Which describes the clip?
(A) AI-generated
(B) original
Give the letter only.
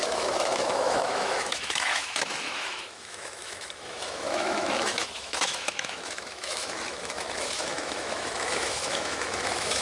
A